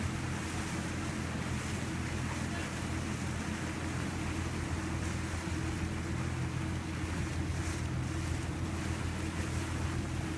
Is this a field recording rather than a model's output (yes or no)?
yes